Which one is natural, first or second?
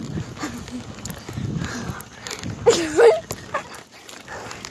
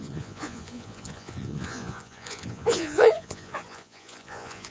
first